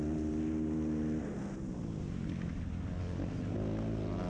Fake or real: real